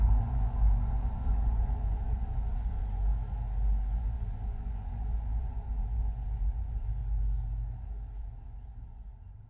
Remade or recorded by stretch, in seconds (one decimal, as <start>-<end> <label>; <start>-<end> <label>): 0.0-3.1 remade; 3.1-4.0 recorded; 4.0-7.0 remade; 7.0-8.2 recorded; 8.2-9.5 remade